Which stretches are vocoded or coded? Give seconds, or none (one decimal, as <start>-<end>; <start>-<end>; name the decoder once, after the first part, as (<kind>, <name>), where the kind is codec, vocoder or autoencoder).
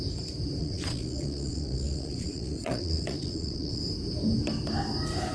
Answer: 0.6-3.8 (vocoder, Vocos)